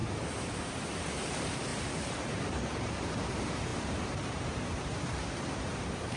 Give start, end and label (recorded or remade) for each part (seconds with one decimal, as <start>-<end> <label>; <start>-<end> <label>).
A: 0.0-0.6 recorded; 0.6-1.7 remade; 1.7-2.7 recorded; 2.7-6.2 remade